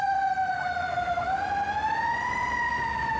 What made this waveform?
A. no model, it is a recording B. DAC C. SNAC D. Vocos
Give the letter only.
A